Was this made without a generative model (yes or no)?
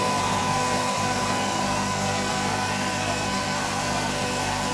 no